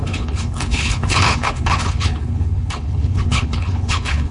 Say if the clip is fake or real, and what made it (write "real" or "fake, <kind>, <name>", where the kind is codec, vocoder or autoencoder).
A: fake, codec, HILCodec